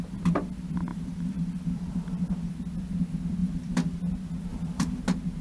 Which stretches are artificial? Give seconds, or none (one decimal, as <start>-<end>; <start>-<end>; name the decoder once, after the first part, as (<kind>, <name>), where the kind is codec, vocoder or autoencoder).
0.9-2.5 (vocoder, BigVGAN v2); 3.4-4.0; 4.5-5.0